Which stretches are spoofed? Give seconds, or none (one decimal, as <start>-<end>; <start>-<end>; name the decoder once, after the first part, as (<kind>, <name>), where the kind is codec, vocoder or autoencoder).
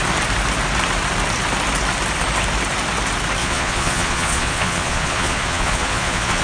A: 3.4-6.4 (vocoder, Vocos)